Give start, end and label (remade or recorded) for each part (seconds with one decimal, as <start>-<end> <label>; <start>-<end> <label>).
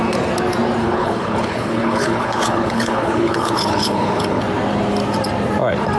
0.0-0.8 recorded; 0.8-4.4 remade; 4.4-6.0 recorded